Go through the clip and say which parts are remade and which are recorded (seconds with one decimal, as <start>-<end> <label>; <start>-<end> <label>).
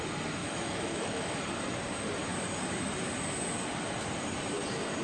0.0-0.4 recorded; 0.4-1.3 remade; 1.3-5.0 recorded